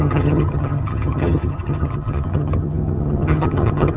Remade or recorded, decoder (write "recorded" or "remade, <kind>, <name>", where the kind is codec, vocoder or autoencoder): remade, vocoder, HiFi-GAN